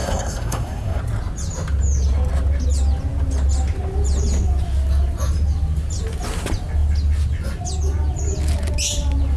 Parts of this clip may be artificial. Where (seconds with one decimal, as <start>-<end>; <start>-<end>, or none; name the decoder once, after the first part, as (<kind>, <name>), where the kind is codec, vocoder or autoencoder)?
0.0-1.0 (codec, SNAC)